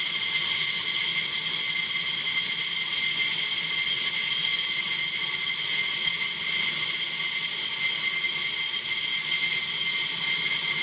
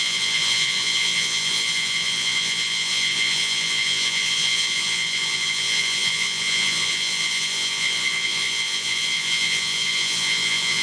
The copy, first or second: second